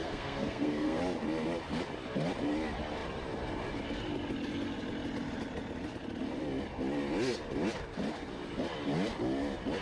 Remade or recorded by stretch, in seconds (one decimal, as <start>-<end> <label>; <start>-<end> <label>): 0.0-1.0 remade; 1.0-9.8 recorded